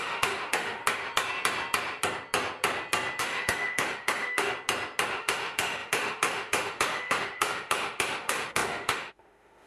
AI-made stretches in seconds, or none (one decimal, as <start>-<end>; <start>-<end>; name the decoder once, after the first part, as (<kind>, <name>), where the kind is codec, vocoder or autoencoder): 0.0-0.8 (autoencoder, DAC-VAE); 3.2-4.5; 5.2-9.7